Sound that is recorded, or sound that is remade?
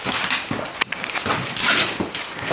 recorded